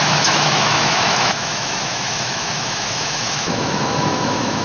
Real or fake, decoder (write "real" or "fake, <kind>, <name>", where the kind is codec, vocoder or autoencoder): fake, autoencoder, DAC-VAE